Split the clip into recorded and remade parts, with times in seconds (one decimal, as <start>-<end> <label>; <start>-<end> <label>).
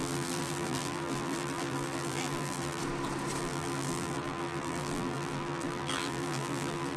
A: 0.0-2.8 remade; 2.8-3.4 recorded; 3.4-7.0 remade